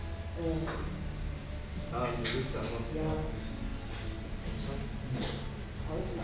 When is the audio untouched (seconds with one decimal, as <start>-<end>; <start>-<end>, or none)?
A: 0.0-6.2